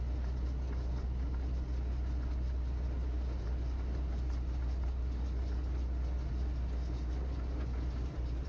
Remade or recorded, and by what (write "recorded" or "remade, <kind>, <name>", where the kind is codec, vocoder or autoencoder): recorded